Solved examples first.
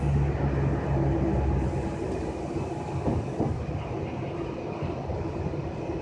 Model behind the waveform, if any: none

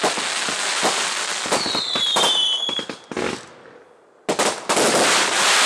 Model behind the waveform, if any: none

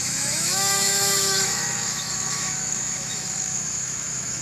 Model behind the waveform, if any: autoencoder, DAC-VAE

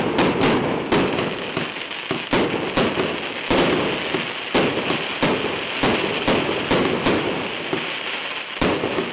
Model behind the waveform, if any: none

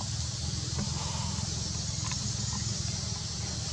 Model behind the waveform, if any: none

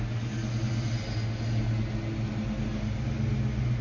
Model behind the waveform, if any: none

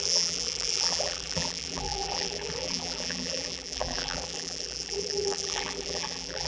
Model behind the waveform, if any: vocoder, BigVGAN v2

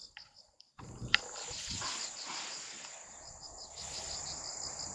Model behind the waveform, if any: none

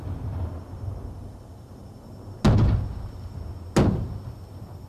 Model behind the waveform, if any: none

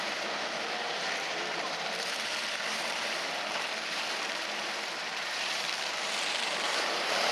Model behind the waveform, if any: vocoder, BigVGAN v2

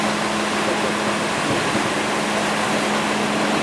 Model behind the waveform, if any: none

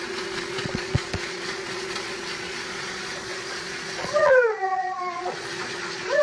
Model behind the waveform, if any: vocoder, Vocos